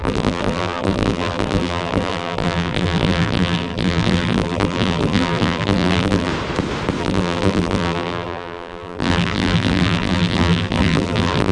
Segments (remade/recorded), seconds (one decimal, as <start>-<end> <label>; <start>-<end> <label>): 0.0-6.3 remade; 6.3-7.0 recorded; 7.0-11.5 remade